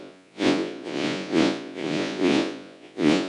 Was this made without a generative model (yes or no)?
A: no